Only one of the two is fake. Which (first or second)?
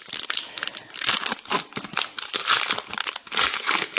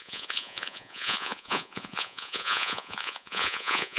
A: second